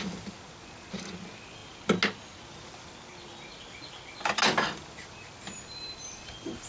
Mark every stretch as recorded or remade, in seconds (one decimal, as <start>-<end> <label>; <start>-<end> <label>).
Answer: 0.0-6.7 recorded